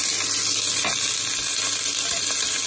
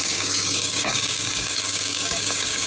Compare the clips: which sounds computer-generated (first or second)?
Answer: second